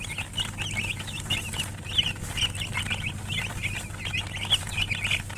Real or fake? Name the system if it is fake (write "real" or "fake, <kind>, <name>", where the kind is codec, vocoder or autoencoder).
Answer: real